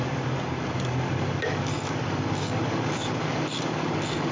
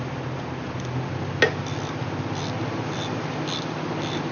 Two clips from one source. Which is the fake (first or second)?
first